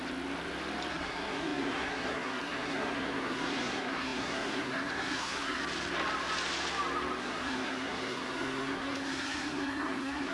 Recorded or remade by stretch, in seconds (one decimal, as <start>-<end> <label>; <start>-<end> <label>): 0.0-0.9 recorded; 0.9-5.6 remade; 5.6-7.2 recorded; 7.2-10.3 remade